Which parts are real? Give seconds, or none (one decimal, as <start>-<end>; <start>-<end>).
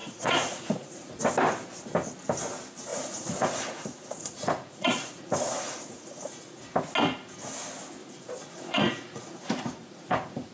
1.2-2.9; 6.6-8.0